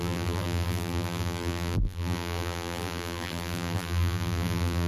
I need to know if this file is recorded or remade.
remade